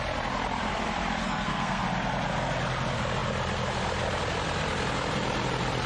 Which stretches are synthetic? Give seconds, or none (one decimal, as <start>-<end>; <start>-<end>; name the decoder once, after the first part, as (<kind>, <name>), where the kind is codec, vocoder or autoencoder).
1.2-1.8 (codec, SNAC)